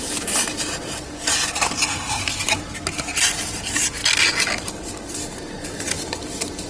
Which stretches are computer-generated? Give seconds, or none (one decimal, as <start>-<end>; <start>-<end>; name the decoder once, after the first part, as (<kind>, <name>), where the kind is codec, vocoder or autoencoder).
none